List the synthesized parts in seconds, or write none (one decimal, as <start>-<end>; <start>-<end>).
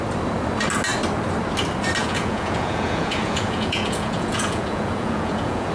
2.0-5.7